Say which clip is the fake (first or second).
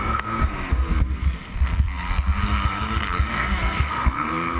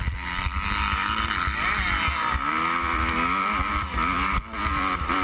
first